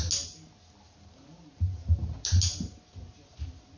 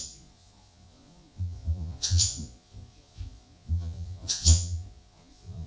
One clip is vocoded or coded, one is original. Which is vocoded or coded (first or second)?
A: second